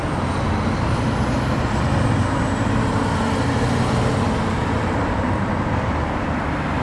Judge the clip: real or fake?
real